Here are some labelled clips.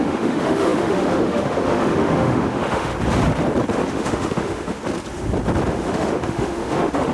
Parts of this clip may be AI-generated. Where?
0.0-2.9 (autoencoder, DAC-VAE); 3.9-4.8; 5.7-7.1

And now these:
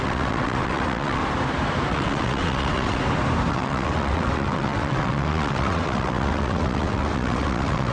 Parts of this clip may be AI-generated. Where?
0.0-1.2 (vocoder, WaveNeXt); 1.9-3.0; 3.5-7.9

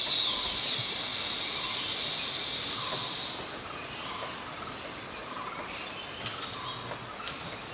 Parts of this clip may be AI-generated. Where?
none

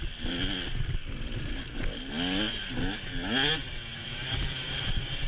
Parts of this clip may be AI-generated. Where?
3.9-5.3 (vocoder, BigVGAN v2)

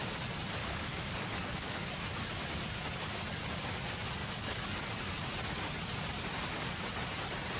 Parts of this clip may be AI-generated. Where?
0.6-1.9 (codec, DAC); 4.2-4.9

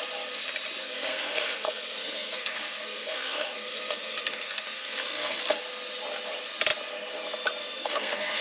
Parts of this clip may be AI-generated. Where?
0.8-5.4 (codec, SNAC); 7.6-8.4